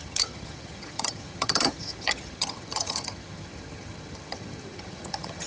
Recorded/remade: remade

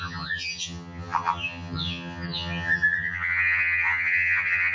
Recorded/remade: remade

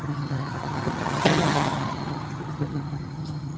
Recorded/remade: remade